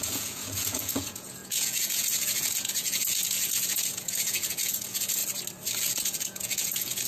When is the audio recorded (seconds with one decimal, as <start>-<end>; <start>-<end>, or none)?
5.2-5.8

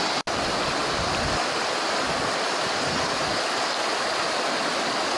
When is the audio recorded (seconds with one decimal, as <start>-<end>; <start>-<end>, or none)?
0.0-5.2

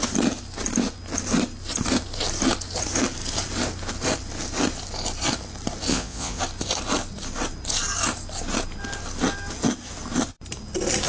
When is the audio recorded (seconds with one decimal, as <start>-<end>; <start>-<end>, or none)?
0.0-5.9; 6.4-11.1

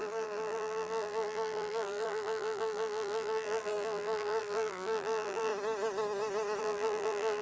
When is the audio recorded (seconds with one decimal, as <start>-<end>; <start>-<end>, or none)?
5.5-6.6

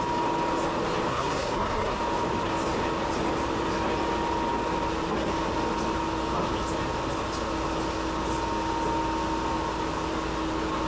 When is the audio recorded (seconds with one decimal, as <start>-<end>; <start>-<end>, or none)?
0.0-1.1; 2.0-10.9

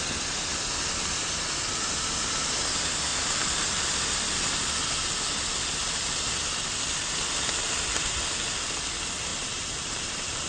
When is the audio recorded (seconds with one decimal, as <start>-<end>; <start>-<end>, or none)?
0.0-3.1; 3.8-9.3

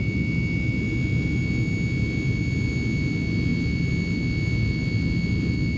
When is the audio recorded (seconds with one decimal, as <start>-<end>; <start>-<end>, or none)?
0.0-5.8

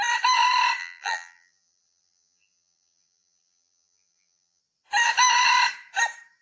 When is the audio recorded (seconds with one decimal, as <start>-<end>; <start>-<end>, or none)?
0.0-0.8; 4.6-6.4